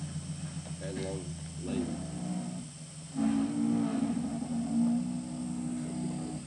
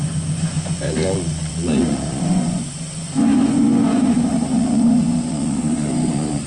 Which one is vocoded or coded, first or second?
second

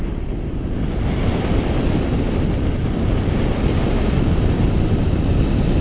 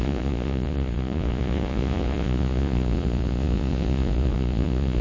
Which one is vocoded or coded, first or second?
second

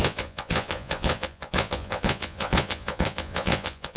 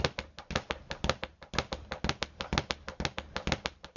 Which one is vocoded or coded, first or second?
first